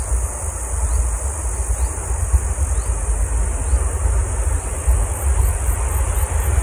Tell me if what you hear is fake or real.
real